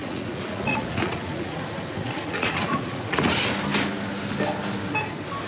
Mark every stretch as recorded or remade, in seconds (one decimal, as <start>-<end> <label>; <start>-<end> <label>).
0.0-3.3 remade; 3.3-5.5 recorded